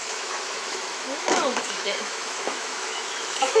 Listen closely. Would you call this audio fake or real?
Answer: fake